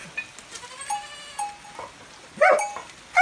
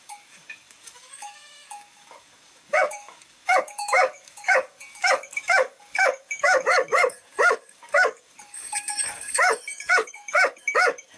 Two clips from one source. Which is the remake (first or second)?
second